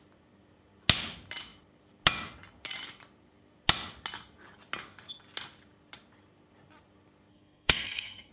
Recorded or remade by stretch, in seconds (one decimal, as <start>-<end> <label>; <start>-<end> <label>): 0.0-7.3 recorded; 7.3-8.3 remade